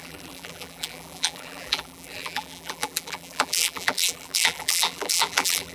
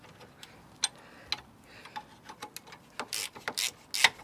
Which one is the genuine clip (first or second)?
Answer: second